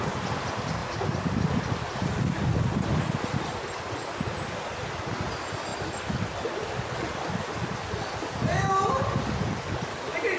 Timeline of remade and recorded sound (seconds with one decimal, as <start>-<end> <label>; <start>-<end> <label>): 0.0-10.4 recorded